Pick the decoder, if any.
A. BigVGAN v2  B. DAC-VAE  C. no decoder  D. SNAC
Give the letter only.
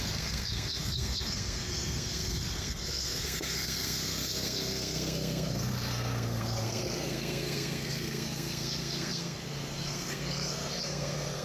D